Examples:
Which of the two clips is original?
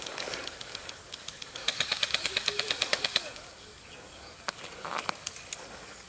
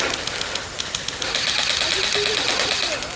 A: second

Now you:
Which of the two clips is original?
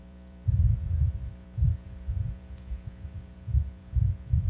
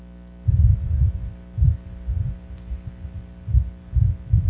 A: second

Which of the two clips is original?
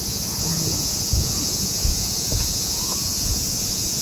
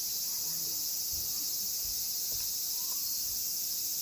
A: second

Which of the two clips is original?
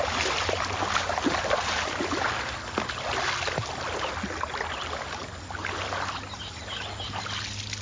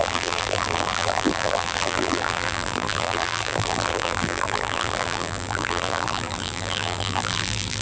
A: first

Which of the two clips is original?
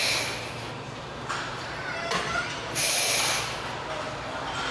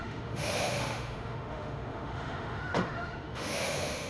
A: first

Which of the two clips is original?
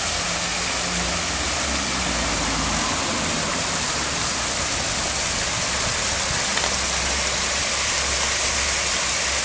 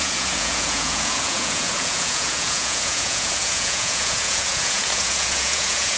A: first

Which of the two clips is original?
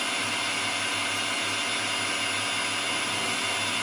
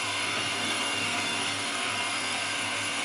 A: first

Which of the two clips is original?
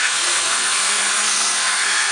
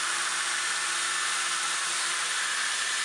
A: second